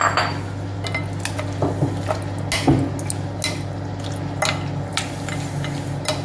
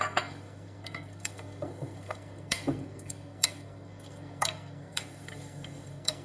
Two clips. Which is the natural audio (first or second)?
first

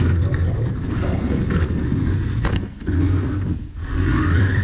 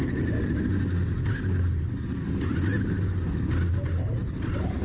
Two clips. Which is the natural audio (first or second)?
second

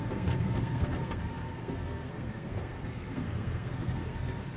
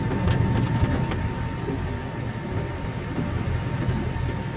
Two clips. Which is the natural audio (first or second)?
second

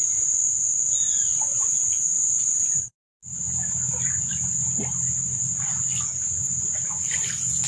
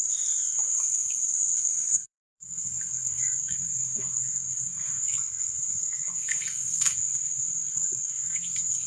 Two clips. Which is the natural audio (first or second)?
first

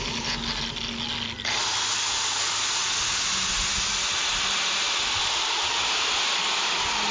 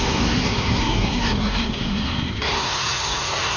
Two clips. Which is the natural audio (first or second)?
first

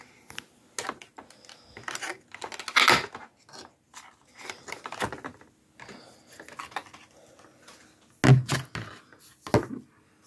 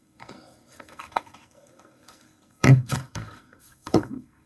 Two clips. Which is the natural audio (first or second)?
first